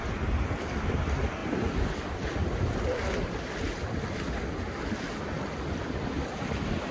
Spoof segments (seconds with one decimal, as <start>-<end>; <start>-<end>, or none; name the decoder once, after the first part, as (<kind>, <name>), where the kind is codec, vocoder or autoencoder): none